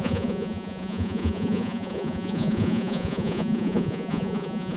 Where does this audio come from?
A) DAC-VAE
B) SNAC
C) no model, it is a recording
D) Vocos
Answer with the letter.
D